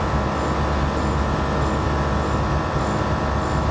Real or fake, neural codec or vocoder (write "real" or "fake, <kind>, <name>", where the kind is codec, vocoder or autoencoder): real